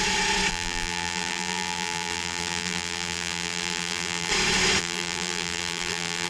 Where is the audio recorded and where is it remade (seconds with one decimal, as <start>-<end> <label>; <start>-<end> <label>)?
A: 0.0-0.5 recorded; 0.5-4.3 remade; 4.3-4.8 recorded; 4.8-6.3 remade

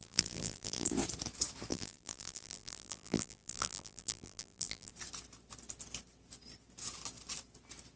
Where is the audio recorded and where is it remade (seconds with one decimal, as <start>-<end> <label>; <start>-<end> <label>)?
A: 0.0-0.9 remade; 0.9-1.7 recorded; 1.7-4.9 remade; 4.9-8.0 recorded

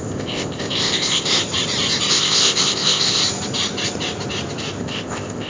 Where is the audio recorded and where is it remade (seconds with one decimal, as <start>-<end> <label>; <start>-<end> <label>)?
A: 0.0-1.4 remade; 1.4-2.1 recorded; 2.1-3.2 remade; 3.2-4.8 recorded; 4.8-5.5 remade

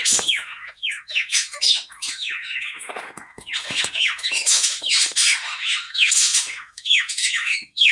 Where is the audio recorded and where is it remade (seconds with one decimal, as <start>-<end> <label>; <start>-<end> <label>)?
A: 0.0-7.9 remade

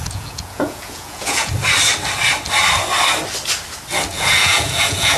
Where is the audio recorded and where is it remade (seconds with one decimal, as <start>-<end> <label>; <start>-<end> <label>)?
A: 0.0-1.5 remade; 1.5-4.1 recorded; 4.1-5.2 remade